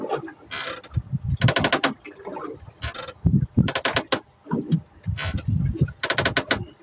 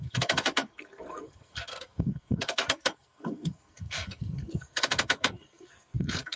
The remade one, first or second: second